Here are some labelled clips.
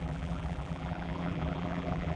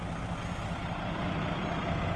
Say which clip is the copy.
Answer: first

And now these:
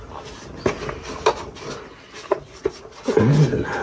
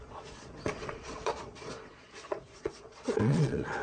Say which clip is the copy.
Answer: second